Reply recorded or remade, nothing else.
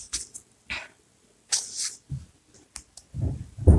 recorded